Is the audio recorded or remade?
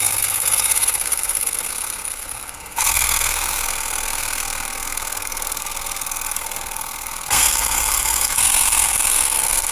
remade